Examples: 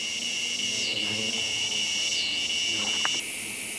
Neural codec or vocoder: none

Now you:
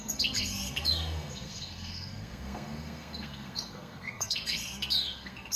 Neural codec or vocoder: codec, SNAC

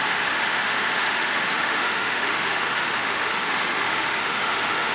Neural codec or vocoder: autoencoder, DAC-VAE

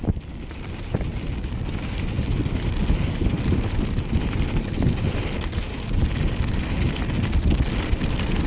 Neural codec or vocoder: none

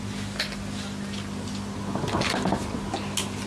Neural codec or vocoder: none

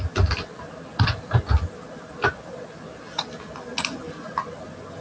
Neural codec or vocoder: none